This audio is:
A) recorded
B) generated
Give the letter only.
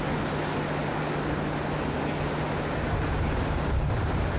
A